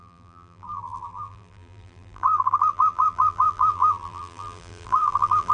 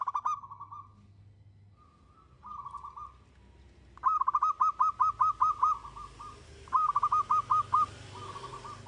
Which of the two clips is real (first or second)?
second